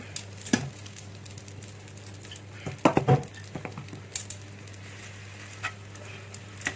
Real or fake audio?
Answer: real